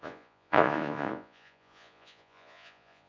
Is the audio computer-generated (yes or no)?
yes